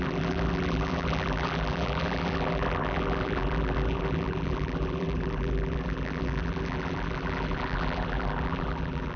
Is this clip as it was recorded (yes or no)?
no